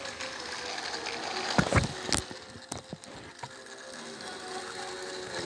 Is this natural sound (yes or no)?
yes